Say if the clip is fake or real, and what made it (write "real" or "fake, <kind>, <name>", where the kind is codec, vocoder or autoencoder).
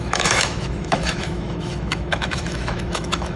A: fake, autoencoder, DAC-VAE